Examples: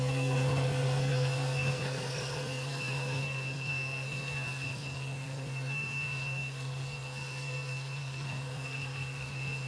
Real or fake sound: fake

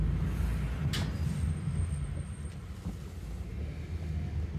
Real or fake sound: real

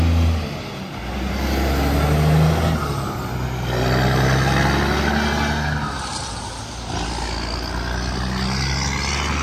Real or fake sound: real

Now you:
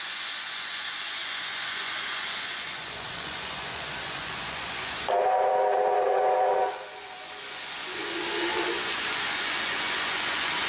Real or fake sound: fake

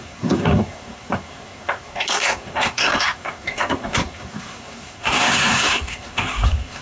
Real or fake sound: fake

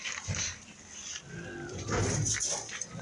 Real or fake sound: real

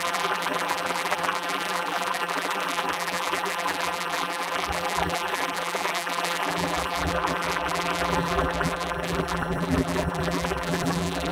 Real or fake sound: fake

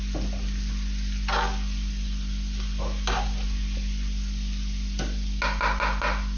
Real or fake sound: real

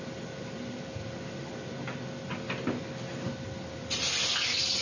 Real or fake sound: real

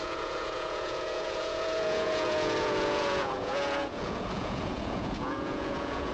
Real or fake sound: fake